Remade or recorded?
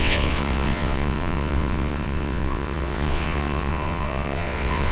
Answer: remade